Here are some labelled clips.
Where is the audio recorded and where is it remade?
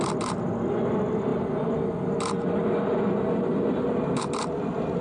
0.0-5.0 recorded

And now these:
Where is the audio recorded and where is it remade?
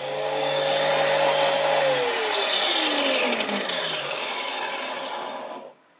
0.0-0.9 remade; 0.9-4.0 recorded; 4.0-4.4 remade; 4.4-5.3 recorded; 5.3-6.0 remade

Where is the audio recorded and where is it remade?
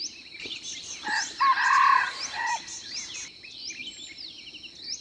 0.0-5.0 recorded